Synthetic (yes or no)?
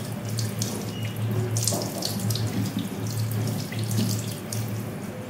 no